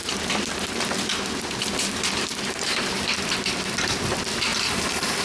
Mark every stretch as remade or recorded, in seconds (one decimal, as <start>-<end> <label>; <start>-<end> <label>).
0.0-2.3 recorded; 2.3-3.0 remade; 3.0-5.2 recorded